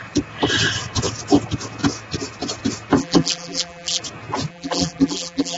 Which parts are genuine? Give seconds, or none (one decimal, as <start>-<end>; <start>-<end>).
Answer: 0.0-3.0; 4.0-4.5